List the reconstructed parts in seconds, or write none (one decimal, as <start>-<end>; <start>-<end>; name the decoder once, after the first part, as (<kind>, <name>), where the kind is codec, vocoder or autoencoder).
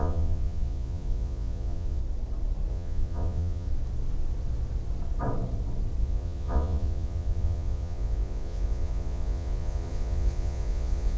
0.0-2.0 (vocoder, Vocos); 2.7-3.7; 6.0-11.2